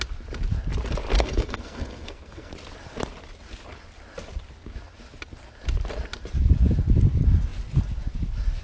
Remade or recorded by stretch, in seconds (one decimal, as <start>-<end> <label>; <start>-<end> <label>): 0.0-1.1 recorded; 1.1-2.5 remade; 2.5-8.6 recorded